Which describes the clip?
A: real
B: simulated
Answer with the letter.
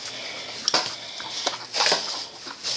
A